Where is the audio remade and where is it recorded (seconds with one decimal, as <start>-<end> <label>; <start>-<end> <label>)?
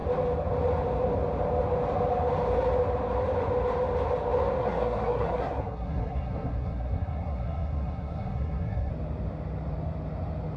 0.0-4.6 recorded; 4.6-8.9 remade; 8.9-10.6 recorded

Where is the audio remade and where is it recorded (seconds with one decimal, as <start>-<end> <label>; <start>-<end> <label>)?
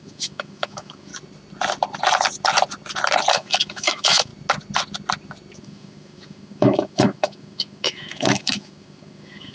0.0-1.1 remade; 1.1-3.3 recorded; 3.3-4.3 remade; 4.3-5.6 recorded; 5.6-9.5 remade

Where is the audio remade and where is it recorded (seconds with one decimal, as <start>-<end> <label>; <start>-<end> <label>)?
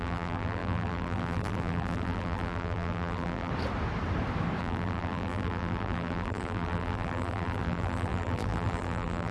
0.0-3.5 remade; 3.5-4.6 recorded; 4.6-9.3 remade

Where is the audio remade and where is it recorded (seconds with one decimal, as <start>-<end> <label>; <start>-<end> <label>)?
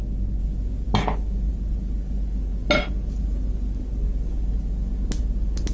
0.0-5.7 recorded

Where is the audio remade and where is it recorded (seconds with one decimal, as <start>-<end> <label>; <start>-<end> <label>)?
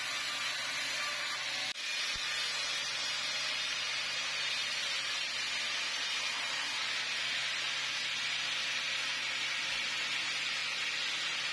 0.0-11.5 recorded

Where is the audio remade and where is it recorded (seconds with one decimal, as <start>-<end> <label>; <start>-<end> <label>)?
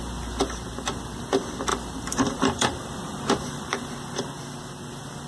0.0-1.7 recorded; 1.7-3.9 remade; 3.9-5.3 recorded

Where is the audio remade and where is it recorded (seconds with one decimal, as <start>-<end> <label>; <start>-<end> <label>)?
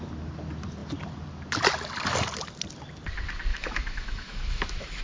0.0-3.5 recorded; 3.5-5.0 remade